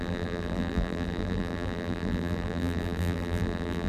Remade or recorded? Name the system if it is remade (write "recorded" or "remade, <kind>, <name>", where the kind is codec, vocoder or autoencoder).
remade, vocoder, BigVGAN v2